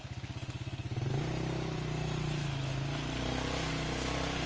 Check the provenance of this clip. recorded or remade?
recorded